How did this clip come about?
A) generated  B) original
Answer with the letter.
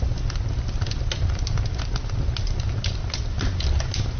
B